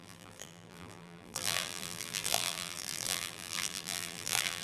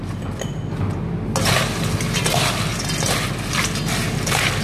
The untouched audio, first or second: second